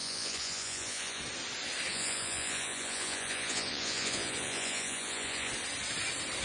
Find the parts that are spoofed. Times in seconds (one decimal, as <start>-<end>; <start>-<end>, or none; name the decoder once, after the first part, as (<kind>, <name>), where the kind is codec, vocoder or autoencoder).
0.0-1.2 (vocoder, Vocos); 1.9-5.5